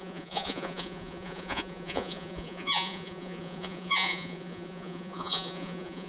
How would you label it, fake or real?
fake